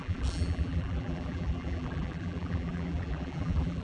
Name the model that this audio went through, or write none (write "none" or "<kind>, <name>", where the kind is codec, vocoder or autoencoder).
vocoder, BigVGAN v2